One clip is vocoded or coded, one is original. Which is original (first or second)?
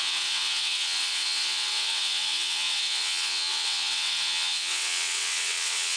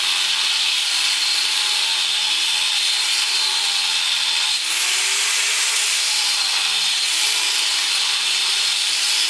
second